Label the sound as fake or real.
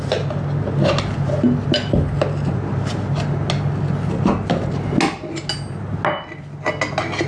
real